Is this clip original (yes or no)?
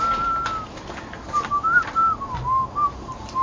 yes